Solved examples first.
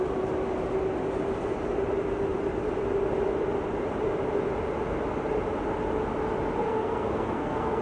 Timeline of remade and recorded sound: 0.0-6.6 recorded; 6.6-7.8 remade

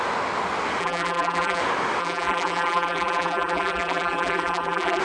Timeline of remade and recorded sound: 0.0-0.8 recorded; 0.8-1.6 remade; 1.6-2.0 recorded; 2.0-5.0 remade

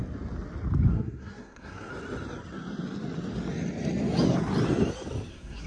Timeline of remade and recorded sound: 0.0-0.9 recorded; 0.9-1.9 remade; 1.9-5.3 recorded; 5.3-5.7 remade